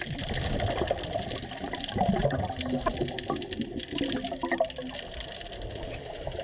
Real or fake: real